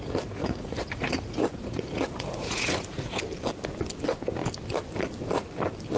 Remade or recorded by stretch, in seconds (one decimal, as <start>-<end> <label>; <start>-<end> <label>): 0.0-0.4 recorded; 0.4-3.2 remade; 3.2-6.0 recorded